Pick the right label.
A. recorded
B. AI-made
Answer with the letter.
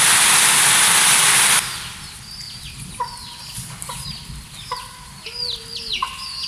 A